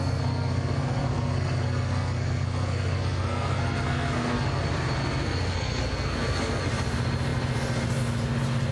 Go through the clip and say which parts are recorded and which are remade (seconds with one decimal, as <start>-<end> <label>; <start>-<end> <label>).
0.0-4.6 remade; 4.6-5.0 recorded; 5.0-6.6 remade; 6.6-8.7 recorded